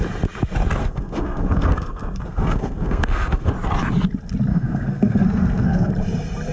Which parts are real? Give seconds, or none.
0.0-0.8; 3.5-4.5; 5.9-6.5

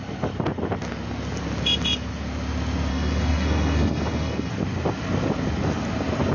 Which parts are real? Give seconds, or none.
0.0-2.9; 4.5-6.3

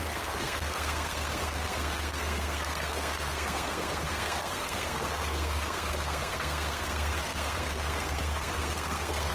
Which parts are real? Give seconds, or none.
none